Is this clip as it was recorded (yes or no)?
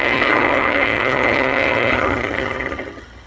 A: no